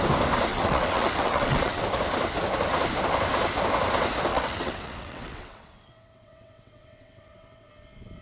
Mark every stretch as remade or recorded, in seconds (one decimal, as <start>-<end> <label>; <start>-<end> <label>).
0.0-0.5 recorded; 0.5-1.8 remade; 1.8-4.3 recorded; 4.3-7.7 remade; 7.7-8.2 recorded